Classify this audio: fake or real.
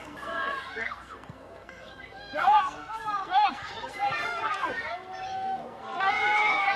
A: fake